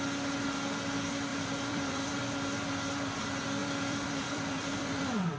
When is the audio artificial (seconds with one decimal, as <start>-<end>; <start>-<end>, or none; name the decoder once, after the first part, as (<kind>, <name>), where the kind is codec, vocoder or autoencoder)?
1.3-2.2 (vocoder, BigVGAN v2); 3.6-5.4